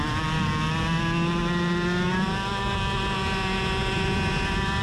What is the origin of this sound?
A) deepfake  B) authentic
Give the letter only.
B